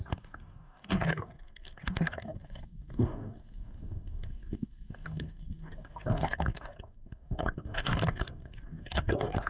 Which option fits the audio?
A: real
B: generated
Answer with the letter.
B